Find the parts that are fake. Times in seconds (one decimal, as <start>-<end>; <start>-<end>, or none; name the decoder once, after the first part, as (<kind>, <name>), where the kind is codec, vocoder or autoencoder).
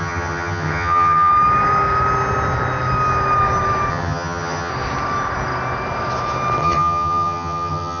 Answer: 0.0-1.3 (vocoder, HiFi-GAN); 3.9-4.7; 6.6-8.0